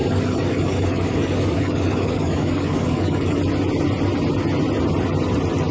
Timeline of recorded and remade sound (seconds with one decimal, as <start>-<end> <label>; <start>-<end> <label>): 0.0-3.4 remade; 3.4-5.7 recorded